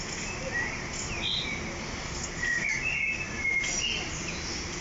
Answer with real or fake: real